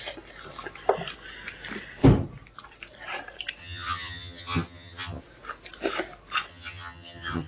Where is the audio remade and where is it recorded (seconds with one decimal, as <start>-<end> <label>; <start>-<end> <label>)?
0.0-3.6 recorded; 3.6-5.2 remade; 5.2-6.5 recorded; 6.5-7.5 remade